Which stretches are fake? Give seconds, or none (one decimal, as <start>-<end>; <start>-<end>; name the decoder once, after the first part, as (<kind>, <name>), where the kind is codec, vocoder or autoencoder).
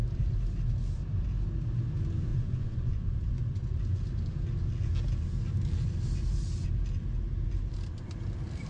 2.3-3.8 (vocoder, Vocos)